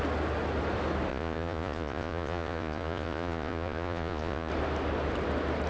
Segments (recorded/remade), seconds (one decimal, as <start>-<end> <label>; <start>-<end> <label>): 0.0-1.1 recorded; 1.1-4.5 remade; 4.5-5.7 recorded